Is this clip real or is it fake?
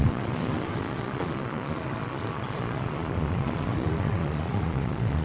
fake